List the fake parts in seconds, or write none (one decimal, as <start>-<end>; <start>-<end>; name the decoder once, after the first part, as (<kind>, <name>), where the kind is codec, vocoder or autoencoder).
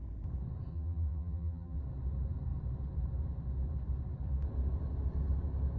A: 0.7-1.8 (vocoder, BigVGAN v2)